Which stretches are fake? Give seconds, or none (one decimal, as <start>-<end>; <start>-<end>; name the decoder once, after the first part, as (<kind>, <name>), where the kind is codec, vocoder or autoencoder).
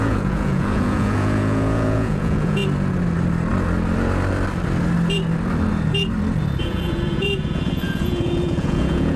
0.0-2.6 (vocoder, Vocos); 6.6-9.2